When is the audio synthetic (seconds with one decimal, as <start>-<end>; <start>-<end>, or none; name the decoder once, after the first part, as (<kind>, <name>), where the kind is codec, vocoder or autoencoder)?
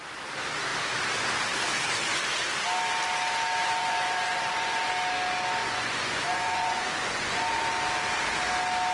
3.6-4.9 (vocoder, Vocos); 5.6-7.6